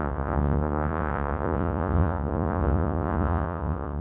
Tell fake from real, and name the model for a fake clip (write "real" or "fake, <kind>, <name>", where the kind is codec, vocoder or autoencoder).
fake, vocoder, Vocos